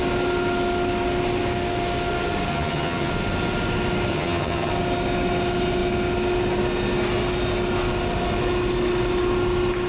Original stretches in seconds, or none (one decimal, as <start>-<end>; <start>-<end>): 0.0-2.5; 3.1-4.1; 4.7-9.9